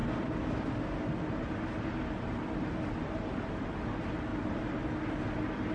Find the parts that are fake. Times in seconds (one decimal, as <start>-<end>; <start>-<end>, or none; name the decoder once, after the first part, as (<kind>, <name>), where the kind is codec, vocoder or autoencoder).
4.3-4.8 (vocoder, BigVGAN v2)